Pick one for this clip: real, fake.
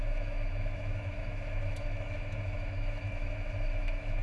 fake